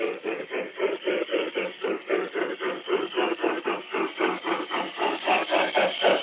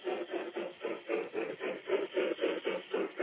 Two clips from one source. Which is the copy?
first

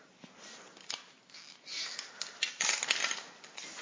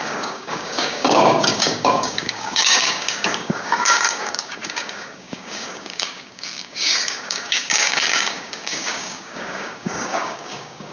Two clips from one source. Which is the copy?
second